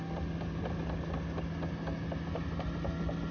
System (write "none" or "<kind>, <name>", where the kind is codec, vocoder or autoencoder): none